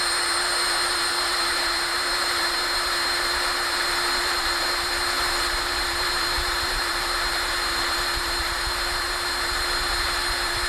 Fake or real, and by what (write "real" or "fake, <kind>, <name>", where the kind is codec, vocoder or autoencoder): fake, vocoder, BigVGAN v2